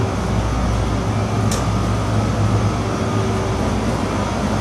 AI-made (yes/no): no